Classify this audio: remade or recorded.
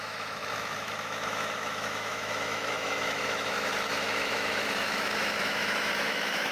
remade